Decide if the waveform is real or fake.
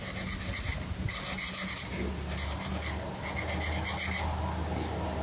real